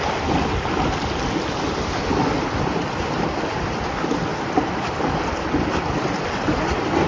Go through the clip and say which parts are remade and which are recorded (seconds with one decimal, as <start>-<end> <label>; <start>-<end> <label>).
0.0-4.3 recorded; 4.3-5.0 remade; 5.0-7.1 recorded